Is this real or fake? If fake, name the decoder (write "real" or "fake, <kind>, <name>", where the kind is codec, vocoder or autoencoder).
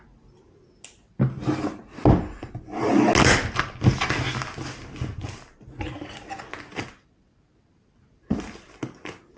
real